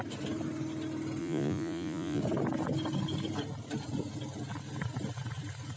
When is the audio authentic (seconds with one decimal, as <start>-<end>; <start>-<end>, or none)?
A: 0.0-1.2; 2.2-5.8